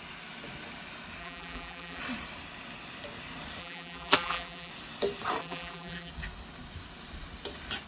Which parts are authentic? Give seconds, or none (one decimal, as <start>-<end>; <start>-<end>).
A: 0.0-1.2; 2.0-3.6; 4.7-5.4; 6.1-7.9